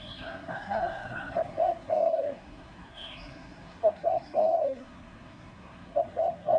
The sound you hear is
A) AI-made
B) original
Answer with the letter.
A